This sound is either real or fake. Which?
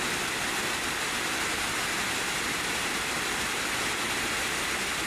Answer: real